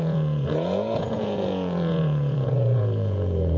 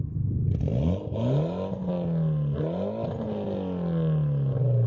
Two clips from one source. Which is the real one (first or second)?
second